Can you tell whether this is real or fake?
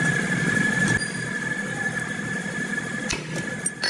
real